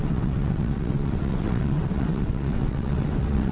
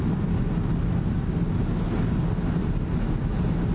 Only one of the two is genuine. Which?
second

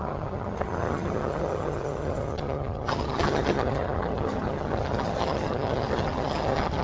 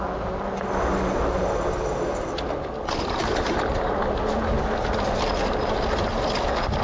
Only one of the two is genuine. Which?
second